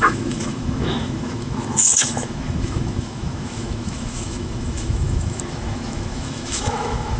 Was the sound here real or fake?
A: fake